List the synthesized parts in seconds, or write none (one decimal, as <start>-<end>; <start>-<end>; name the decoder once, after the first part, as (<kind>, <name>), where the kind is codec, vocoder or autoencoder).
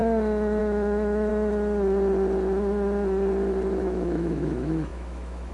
0.6-1.3 (autoencoder, DAC-VAE); 3.8-5.5